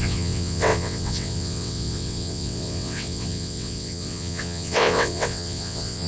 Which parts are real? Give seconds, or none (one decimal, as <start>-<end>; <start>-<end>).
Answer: none